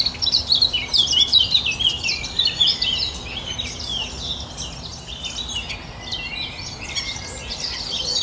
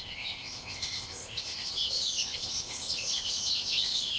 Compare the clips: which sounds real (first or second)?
first